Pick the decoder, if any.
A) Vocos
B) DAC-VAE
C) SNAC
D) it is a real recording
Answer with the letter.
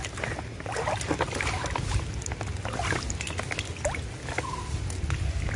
D